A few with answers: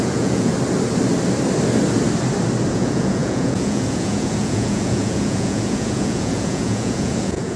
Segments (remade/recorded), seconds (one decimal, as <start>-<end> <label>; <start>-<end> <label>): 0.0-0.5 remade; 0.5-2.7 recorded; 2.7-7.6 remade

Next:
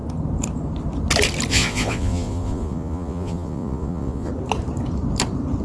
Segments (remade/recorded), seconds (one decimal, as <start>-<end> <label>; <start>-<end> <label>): 0.0-1.5 recorded; 1.5-4.3 remade; 4.3-5.6 recorded

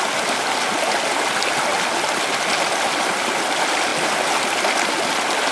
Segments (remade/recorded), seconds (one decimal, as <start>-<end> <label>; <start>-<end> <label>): 0.0-5.5 recorded

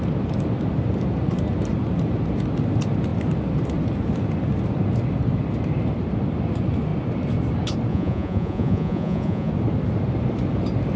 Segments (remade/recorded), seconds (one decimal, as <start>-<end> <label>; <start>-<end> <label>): 0.0-7.9 recorded; 7.9-9.5 remade; 9.5-11.0 recorded

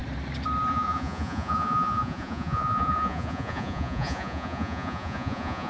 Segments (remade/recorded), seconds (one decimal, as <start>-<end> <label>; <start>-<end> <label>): 0.0-0.7 recorded; 0.7-5.7 remade